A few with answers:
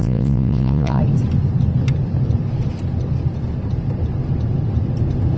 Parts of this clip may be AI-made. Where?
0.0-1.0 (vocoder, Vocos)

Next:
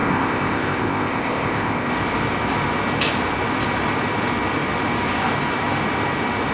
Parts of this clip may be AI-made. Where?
0.0-1.9 (codec, ZipCodec)